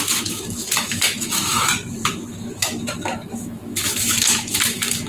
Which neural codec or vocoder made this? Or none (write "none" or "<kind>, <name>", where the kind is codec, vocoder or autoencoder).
autoencoder, DAC-VAE